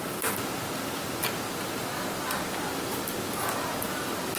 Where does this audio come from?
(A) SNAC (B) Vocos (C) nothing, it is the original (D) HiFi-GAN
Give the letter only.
C